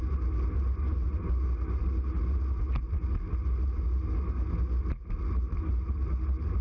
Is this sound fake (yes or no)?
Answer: no